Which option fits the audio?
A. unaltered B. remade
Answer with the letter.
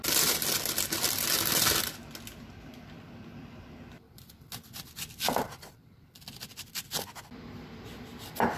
A